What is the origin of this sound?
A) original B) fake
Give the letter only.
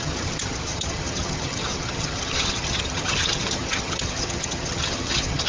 B